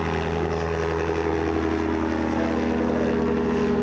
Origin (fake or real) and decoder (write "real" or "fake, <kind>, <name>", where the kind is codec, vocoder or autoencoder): real